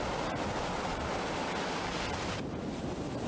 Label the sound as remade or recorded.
recorded